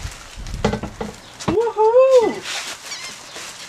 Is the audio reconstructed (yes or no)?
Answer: no